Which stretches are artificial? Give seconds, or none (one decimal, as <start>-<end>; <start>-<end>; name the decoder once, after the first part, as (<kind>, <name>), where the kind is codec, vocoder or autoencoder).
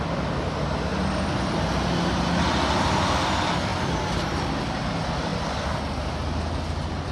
none